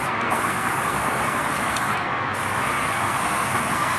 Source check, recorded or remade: remade